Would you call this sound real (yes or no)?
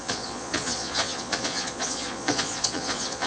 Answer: no